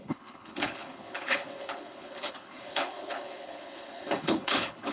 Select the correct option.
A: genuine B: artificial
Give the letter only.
B